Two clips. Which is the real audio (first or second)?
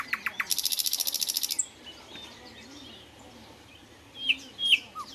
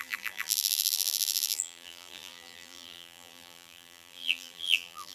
first